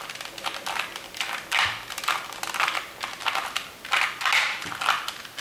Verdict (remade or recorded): recorded